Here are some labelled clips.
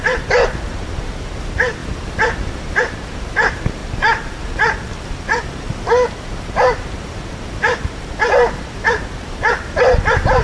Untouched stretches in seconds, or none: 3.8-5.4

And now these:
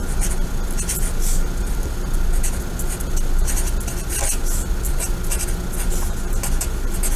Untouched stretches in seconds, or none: 0.0-7.2

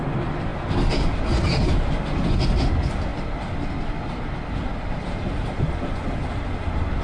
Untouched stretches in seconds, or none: 0.0-0.5; 1.9-3.1; 6.3-7.0

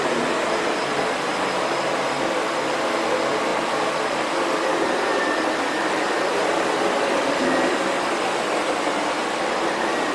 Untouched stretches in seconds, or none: 0.0-3.5; 8.1-10.1

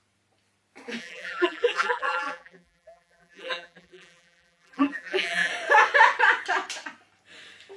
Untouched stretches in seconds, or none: 0.0-1.0; 5.5-7.8

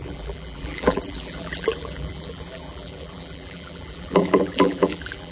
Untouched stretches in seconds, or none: none